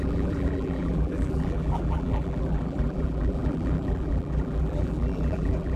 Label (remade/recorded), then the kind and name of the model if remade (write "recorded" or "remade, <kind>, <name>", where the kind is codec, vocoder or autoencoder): remade, vocoder, BigVGAN v2